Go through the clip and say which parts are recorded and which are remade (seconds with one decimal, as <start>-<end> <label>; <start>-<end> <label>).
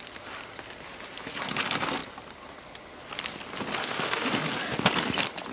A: 0.0-3.8 recorded; 3.8-4.3 remade; 4.3-5.5 recorded